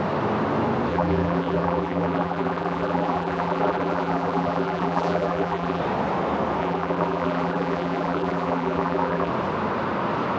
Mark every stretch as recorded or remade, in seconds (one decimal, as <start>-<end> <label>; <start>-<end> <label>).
0.0-0.9 recorded; 0.9-5.8 remade; 5.8-6.6 recorded; 6.6-9.3 remade; 9.3-10.4 recorded